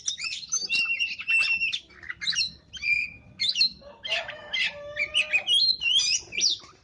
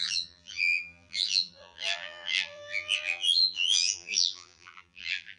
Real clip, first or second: first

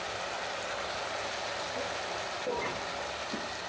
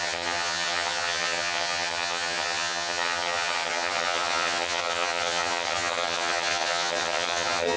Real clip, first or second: first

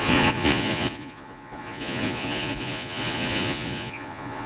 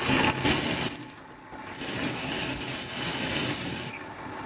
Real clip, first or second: second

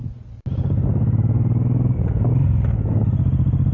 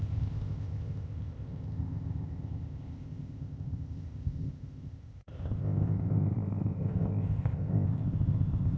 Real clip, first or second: first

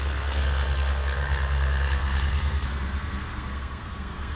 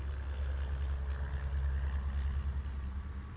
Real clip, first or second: second